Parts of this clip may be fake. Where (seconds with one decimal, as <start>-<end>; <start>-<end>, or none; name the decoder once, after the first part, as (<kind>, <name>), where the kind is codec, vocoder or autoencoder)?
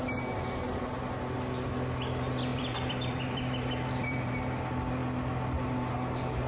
2.5-4.3 (vocoder, BigVGAN v2)